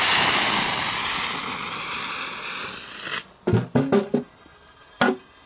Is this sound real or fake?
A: real